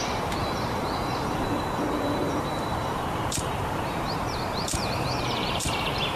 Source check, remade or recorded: remade